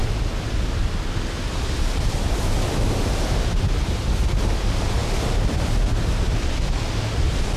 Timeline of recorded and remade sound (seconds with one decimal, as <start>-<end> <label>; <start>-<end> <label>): 0.0-7.6 recorded